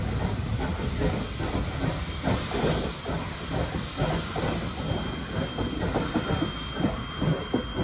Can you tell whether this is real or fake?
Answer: real